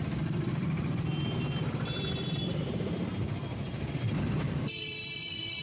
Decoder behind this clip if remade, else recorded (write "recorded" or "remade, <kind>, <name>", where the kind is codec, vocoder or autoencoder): remade, vocoder, BigVGAN v2